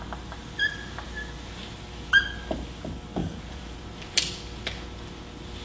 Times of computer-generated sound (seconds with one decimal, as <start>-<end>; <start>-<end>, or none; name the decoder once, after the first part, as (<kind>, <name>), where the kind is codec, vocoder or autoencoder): 3.2-3.8 (vocoder, Vocos)